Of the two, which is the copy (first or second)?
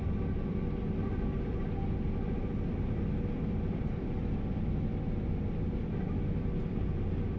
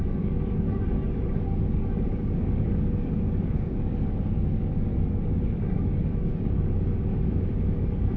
second